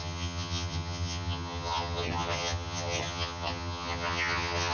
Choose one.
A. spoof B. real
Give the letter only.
A